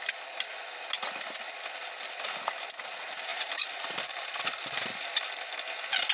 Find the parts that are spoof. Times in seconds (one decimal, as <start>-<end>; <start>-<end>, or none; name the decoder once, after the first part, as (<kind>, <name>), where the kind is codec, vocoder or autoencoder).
3.3-5.2 (vocoder, BigVGAN v2)